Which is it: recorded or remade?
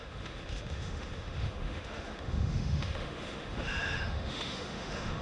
remade